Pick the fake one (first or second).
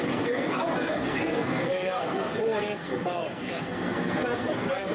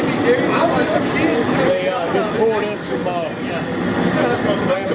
first